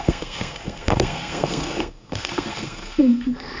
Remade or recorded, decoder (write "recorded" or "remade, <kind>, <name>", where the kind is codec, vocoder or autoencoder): remade, codec, SNAC